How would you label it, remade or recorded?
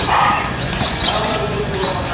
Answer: remade